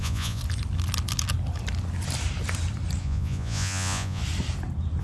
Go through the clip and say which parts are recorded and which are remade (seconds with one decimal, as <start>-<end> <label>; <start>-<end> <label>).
0.0-0.4 remade; 0.4-3.0 recorded; 3.0-4.2 remade; 4.2-5.0 recorded